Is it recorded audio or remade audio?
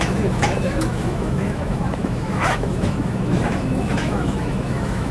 remade